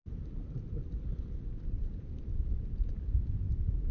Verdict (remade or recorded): remade